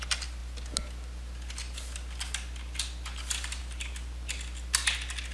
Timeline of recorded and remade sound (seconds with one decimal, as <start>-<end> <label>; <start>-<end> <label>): 0.0-5.3 recorded